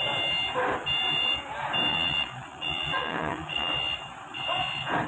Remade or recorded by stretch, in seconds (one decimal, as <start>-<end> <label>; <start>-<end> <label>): 0.0-1.9 recorded; 1.9-3.7 remade; 3.7-5.1 recorded